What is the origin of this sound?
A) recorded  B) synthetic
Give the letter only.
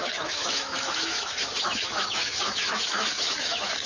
B